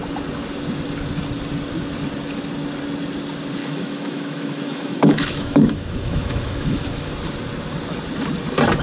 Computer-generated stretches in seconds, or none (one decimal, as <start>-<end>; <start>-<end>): 3.6-7.1